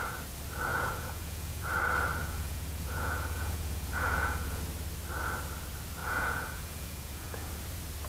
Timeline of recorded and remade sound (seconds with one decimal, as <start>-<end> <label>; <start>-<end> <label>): 0.0-0.7 recorded; 0.7-1.6 remade; 1.6-2.2 recorded; 2.2-4.6 remade; 4.6-6.0 recorded; 6.0-7.5 remade; 7.5-8.1 recorded